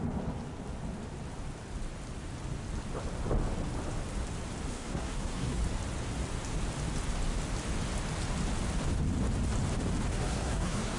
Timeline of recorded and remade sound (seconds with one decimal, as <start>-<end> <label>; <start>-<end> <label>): 0.0-4.7 recorded; 4.7-5.6 remade; 5.6-10.1 recorded; 10.1-11.0 remade